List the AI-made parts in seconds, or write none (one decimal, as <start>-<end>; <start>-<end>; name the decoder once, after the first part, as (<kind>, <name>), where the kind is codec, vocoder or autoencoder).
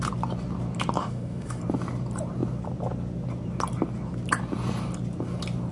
1.0-1.6 (autoencoder, DAC-VAE)